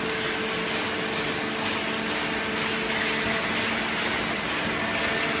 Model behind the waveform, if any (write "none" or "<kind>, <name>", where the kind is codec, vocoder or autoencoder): none